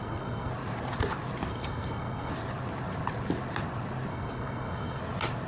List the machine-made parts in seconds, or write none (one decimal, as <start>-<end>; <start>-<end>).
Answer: 0.0-0.5; 1.5-2.3; 4.1-5.0